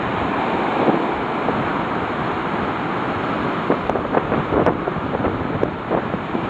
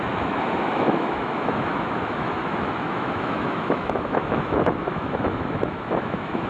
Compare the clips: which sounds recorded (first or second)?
first